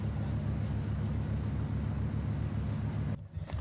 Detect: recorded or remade recorded